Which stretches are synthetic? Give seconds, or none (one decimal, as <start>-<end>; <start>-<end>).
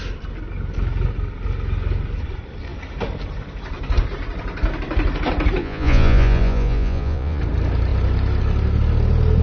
5.6-7.4